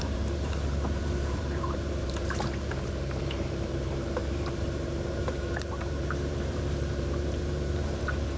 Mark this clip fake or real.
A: fake